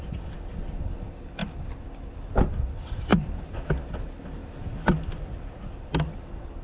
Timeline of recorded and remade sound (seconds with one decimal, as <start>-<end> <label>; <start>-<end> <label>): 0.0-6.6 recorded